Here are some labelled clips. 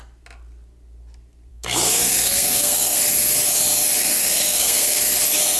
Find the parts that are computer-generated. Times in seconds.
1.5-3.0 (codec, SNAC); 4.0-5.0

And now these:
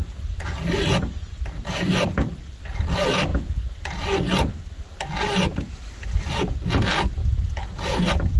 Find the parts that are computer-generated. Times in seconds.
none